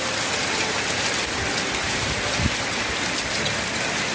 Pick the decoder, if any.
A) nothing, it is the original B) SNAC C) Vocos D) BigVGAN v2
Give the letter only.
A